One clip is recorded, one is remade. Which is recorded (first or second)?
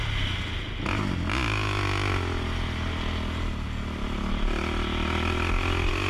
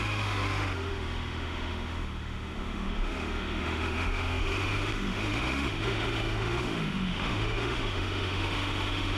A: first